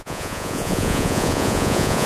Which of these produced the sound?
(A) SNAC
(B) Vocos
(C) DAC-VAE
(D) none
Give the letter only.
B